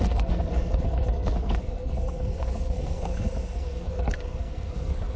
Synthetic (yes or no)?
yes